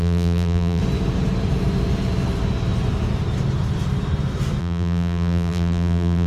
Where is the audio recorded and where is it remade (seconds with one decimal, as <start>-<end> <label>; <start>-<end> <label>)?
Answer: 0.0-0.8 remade; 0.8-4.6 recorded; 4.6-6.3 remade